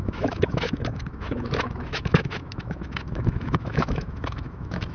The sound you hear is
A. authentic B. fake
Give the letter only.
B